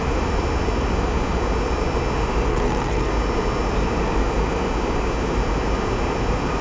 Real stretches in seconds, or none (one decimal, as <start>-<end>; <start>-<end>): 0.0-2.5; 3.1-6.6